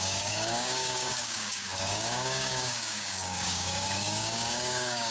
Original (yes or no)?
no